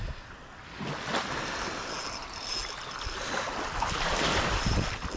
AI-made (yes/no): no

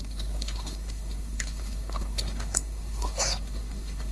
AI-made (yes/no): yes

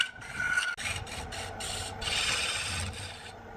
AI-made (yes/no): no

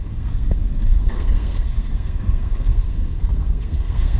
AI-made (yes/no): yes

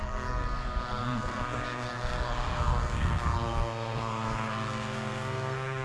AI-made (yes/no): yes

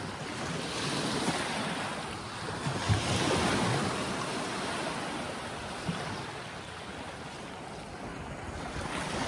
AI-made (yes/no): no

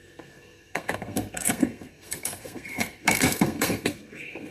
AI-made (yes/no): yes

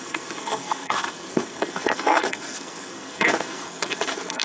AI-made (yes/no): yes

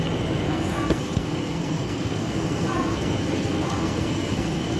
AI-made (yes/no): yes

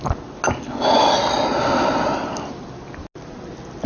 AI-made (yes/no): no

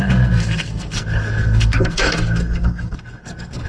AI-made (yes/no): yes